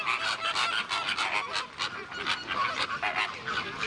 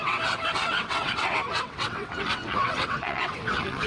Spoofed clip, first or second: second